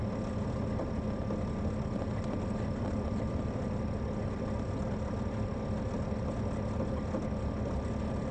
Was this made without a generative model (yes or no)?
yes